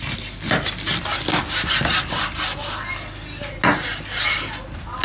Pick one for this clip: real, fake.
real